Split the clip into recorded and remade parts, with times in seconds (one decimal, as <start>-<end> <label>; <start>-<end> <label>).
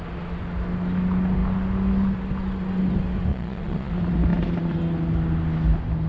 0.0-3.3 recorded; 3.3-3.9 remade; 3.9-6.1 recorded